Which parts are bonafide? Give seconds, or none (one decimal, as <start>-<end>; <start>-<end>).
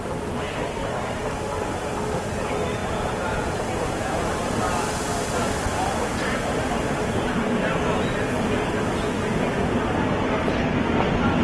0.0-2.8; 4.3-11.4